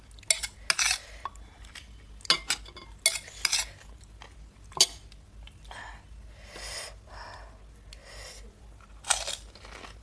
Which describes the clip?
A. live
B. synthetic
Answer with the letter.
A